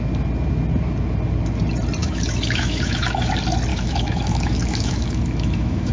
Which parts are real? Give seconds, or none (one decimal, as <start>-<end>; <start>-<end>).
0.0-2.0; 3.3-3.7